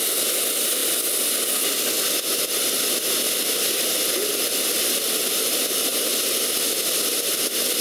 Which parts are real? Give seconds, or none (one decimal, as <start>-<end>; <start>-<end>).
0.0-7.8